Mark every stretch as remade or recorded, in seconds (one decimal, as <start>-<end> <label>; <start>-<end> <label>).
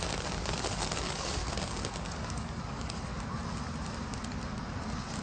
0.0-1.4 remade; 1.4-2.0 recorded; 2.0-3.1 remade; 3.1-5.2 recorded